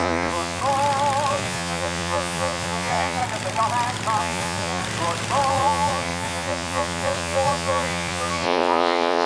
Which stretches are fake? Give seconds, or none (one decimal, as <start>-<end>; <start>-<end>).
0.0-0.6; 1.3-3.2; 4.2-4.8; 5.5-9.3